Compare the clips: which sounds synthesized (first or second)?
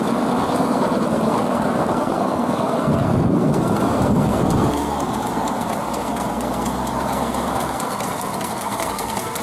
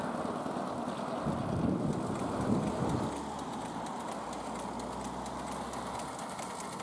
first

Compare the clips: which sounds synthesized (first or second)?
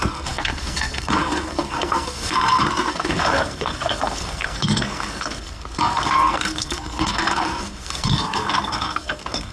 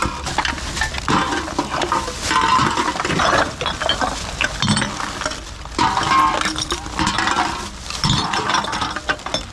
first